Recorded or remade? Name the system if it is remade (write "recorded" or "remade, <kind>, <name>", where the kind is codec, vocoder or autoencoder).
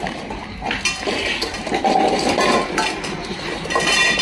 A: recorded